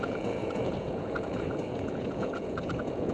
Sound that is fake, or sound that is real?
fake